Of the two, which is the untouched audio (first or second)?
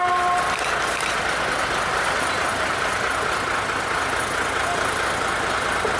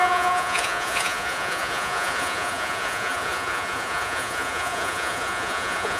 first